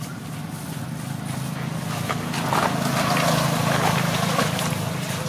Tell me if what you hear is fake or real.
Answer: real